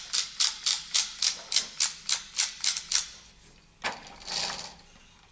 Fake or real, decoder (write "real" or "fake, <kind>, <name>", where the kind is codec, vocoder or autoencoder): real